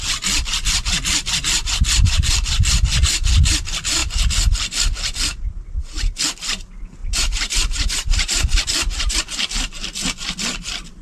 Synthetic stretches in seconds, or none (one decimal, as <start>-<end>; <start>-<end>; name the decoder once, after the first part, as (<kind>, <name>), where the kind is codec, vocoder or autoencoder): 7.0-9.2 (vocoder, BigVGAN v2)